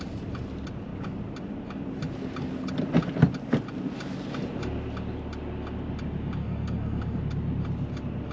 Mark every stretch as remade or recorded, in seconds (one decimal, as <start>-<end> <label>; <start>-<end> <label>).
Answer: 0.0-6.4 recorded; 6.4-7.2 remade; 7.2-8.3 recorded